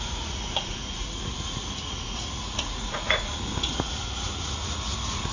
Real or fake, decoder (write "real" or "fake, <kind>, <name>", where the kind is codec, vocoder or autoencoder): fake, vocoder, Vocos